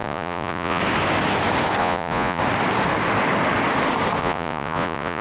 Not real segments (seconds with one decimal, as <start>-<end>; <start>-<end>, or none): 0.0-0.8; 1.8-2.4; 4.2-5.2